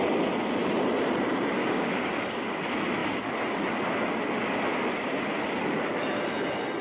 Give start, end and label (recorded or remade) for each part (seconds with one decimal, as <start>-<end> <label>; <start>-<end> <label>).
0.0-1.6 recorded; 1.6-2.6 remade; 2.6-6.8 recorded